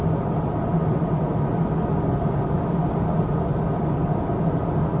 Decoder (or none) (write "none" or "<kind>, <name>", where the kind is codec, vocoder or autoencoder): none